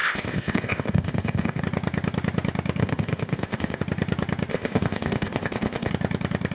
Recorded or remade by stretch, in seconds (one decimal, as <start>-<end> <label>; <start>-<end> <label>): 0.0-1.6 remade; 1.6-2.8 recorded; 2.8-3.8 remade; 3.8-4.5 recorded; 4.5-5.9 remade; 5.9-6.5 recorded

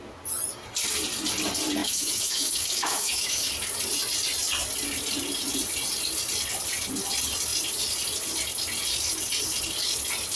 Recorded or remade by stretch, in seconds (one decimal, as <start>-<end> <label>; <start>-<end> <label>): 0.0-1.8 recorded; 1.8-3.5 remade; 3.5-10.4 recorded